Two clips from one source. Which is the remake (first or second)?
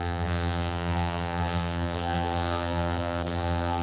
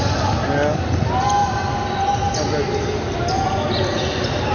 first